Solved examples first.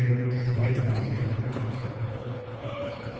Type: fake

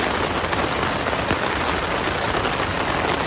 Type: real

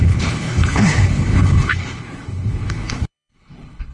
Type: fake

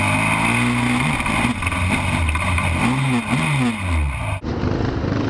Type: real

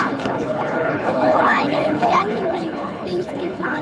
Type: fake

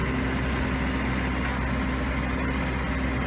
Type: real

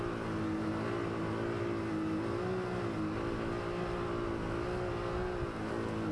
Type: real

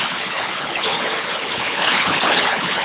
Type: fake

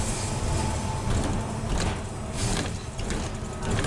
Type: real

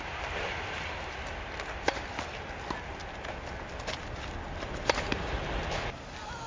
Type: real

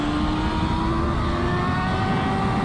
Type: real